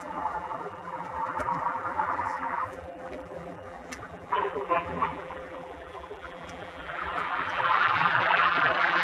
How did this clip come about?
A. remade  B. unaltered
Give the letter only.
A